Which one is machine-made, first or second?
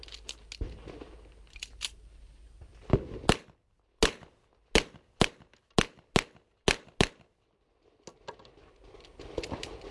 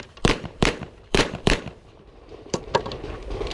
second